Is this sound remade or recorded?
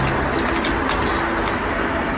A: recorded